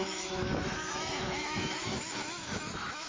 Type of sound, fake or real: fake